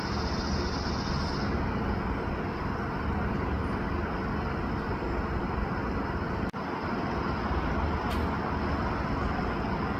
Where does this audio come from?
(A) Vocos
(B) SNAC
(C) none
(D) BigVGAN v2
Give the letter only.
C